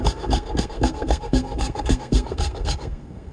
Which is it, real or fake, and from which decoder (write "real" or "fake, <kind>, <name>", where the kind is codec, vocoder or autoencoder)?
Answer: fake, codec, SNAC